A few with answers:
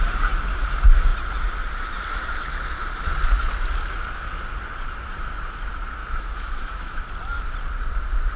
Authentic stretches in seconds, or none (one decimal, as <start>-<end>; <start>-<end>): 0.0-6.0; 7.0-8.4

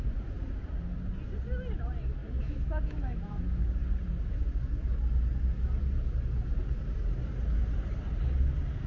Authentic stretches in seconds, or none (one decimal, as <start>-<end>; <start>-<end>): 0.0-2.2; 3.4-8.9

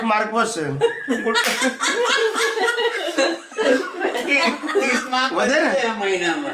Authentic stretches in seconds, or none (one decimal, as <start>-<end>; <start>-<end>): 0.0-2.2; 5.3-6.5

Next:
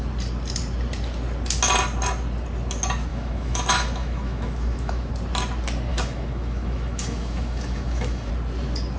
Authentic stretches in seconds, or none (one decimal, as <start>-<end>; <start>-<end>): 0.0-3.1; 5.1-5.9; 8.3-9.0

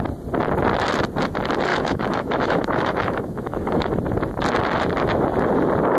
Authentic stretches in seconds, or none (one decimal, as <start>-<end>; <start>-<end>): 0.0-1.7; 3.9-6.0